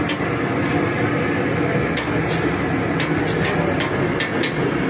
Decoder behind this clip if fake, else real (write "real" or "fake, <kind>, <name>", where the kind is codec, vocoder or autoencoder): real